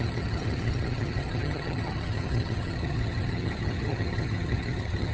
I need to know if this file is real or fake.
fake